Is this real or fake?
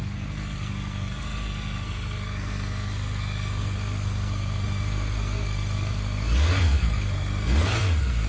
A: fake